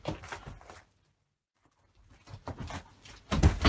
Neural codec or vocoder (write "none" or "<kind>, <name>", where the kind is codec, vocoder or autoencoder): none